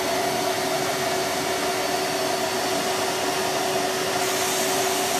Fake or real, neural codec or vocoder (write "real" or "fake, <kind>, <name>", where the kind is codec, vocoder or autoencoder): real